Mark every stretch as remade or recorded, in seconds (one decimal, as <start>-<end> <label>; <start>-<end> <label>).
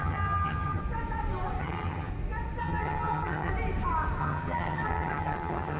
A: 0.0-0.8 remade; 0.8-1.6 recorded; 1.6-2.1 remade; 2.1-2.6 recorded; 2.6-3.5 remade; 3.5-4.2 recorded; 4.2-5.8 remade